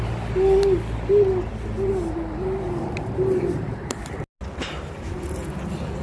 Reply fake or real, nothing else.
real